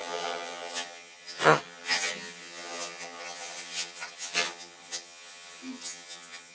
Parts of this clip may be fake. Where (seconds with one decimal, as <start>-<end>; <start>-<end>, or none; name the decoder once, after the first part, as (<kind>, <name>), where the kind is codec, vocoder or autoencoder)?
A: 0.0-6.5 (vocoder, HiFi-GAN)